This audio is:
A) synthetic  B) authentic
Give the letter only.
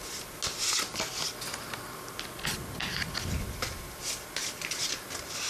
B